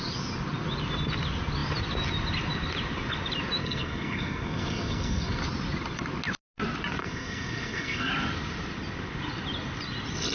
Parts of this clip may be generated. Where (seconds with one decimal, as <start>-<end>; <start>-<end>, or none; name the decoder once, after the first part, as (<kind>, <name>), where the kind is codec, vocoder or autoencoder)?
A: 3.6-5.4 (codec, SNAC); 7.0-8.1